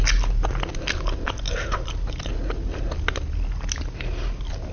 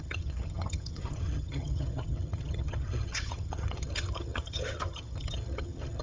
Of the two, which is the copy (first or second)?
second